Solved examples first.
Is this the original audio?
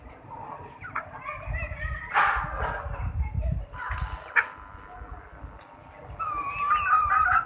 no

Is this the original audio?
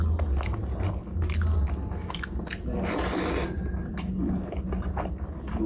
yes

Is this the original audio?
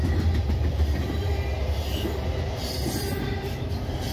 yes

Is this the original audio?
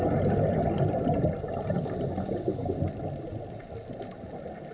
yes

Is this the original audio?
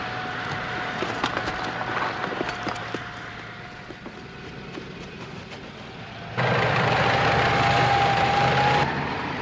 yes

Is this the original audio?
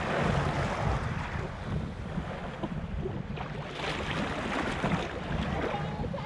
yes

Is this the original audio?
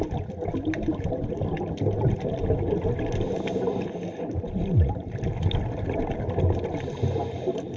yes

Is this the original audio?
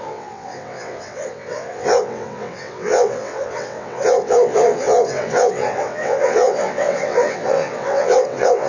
no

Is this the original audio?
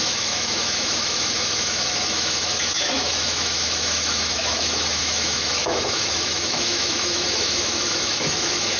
no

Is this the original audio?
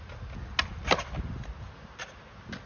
yes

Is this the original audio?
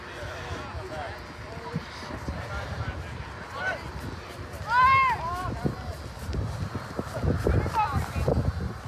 yes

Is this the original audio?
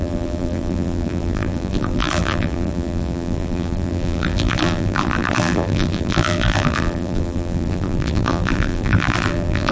no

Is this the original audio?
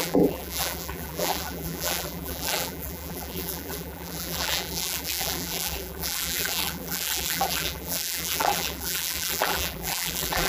no